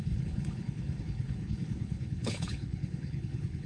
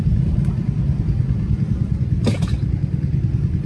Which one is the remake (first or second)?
first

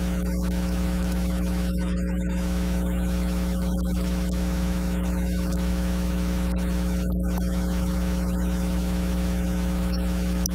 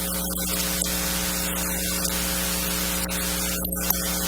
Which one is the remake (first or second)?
first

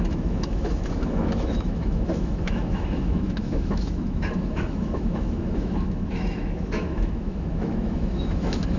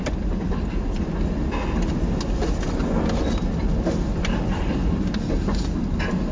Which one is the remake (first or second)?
first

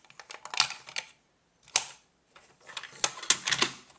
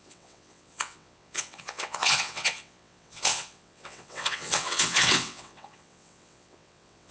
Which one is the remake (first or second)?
second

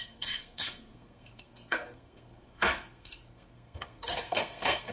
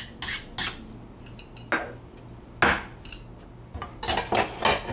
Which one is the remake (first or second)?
first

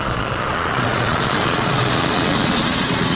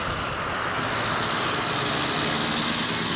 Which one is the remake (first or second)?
first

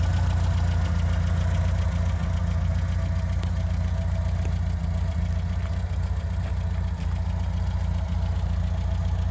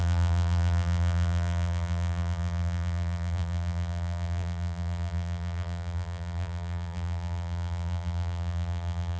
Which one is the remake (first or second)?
second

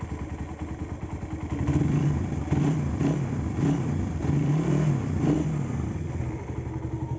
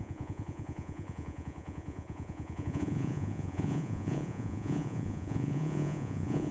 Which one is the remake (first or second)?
second